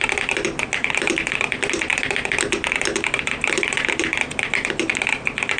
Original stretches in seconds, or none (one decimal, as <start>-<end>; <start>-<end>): 0.0-5.6